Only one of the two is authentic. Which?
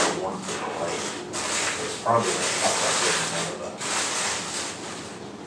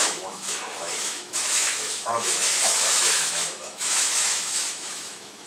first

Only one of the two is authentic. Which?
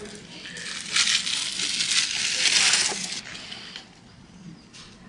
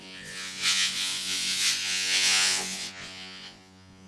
first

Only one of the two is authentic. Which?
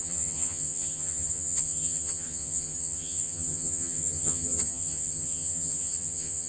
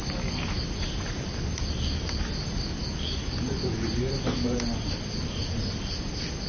second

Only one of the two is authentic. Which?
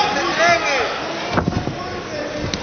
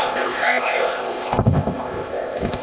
first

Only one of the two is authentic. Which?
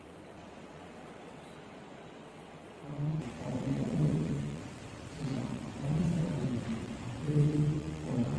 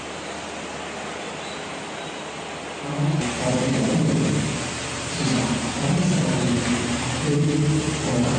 second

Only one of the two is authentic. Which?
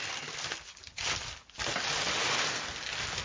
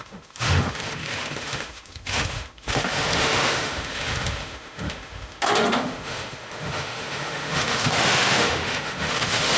first